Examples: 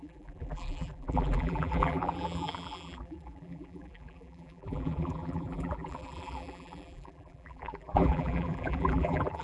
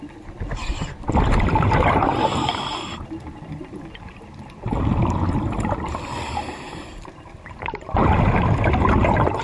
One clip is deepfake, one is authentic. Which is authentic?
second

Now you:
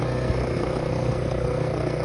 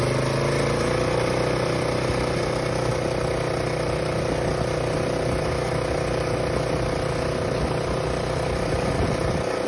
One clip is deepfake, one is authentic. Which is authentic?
second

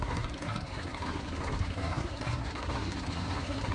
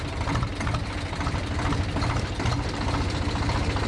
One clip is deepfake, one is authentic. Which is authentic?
second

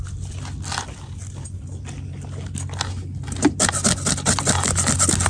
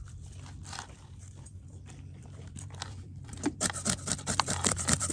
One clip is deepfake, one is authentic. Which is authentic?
first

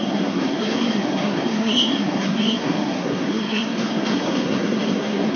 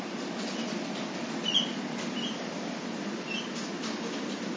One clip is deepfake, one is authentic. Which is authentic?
second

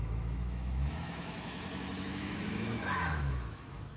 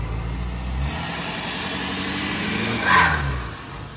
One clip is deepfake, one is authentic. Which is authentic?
second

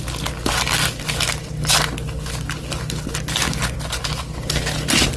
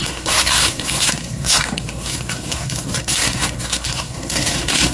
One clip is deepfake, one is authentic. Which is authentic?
first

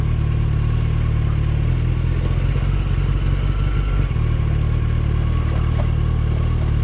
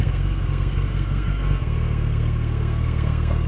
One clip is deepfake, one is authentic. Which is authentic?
first